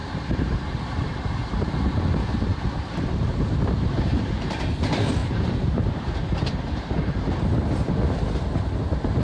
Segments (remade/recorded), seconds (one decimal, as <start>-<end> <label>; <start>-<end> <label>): 0.0-2.0 remade; 2.0-2.5 recorded; 2.5-4.6 remade; 4.6-5.2 recorded; 5.2-7.3 remade; 7.3-9.2 recorded